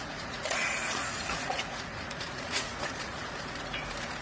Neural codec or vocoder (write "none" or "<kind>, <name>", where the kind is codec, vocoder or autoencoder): vocoder, Vocos